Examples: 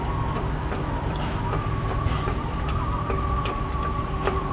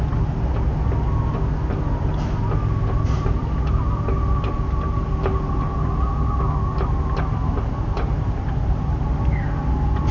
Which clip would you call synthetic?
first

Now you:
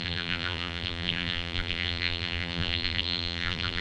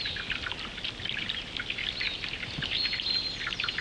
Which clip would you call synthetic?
first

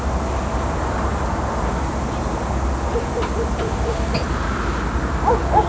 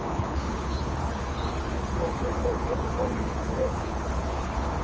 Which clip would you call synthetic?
second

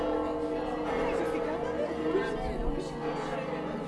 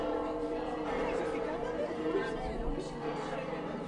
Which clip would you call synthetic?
second